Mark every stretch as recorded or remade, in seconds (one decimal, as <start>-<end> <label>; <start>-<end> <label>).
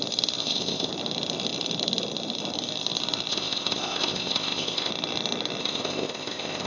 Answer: 0.0-0.4 recorded; 0.4-0.9 remade; 0.9-3.3 recorded; 3.3-4.9 remade; 4.9-5.6 recorded; 5.6-6.7 remade